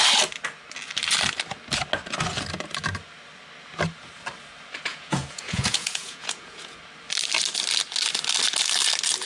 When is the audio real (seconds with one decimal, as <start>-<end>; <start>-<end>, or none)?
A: 0.0-4.9; 6.8-9.3